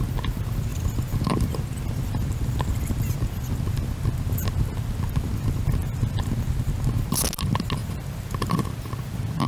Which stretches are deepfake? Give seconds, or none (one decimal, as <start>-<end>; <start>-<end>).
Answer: 7.8-9.5